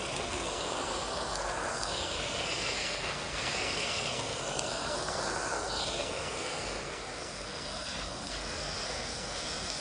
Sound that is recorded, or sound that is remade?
remade